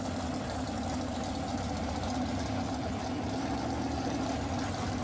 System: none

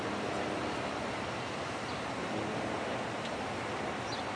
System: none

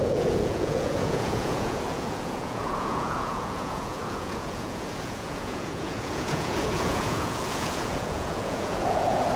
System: vocoder, Vocos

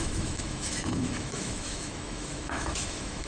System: autoencoder, DAC-VAE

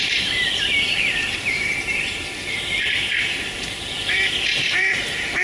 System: vocoder, BigVGAN v2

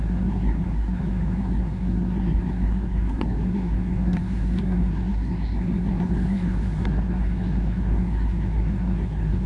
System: codec, SNAC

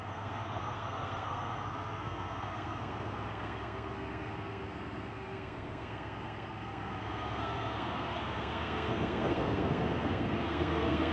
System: codec, SNAC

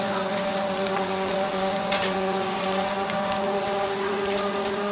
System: vocoder, Vocos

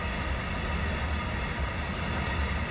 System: none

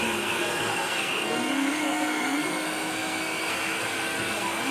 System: codec, SNAC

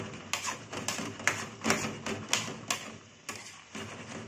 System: none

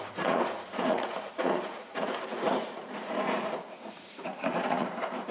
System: vocoder, Vocos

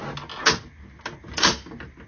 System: none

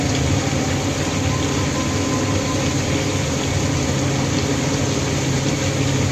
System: none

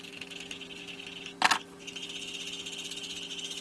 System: none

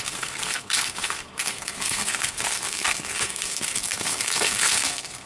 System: codec, SNAC